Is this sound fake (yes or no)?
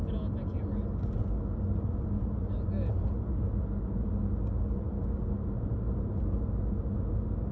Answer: no